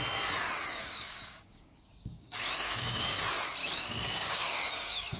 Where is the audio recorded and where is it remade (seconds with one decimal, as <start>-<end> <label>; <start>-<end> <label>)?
0.0-0.8 recorded; 0.8-3.2 remade; 3.2-3.6 recorded; 3.6-5.2 remade